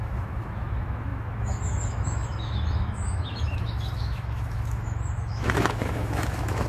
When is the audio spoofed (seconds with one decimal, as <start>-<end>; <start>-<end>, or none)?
0.0-6.7